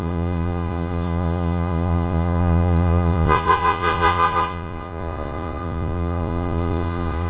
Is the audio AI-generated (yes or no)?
yes